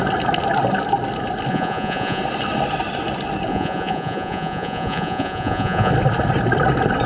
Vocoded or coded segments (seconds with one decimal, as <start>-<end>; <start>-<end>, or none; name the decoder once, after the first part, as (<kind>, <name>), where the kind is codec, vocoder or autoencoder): 1.5-2.2 (vocoder, Vocos); 3.5-5.9